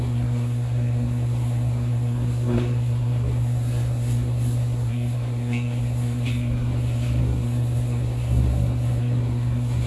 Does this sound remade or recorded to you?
remade